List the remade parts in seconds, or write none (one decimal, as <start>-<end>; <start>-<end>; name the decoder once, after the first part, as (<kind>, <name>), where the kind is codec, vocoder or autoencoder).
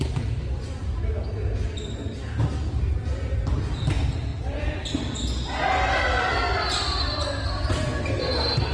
none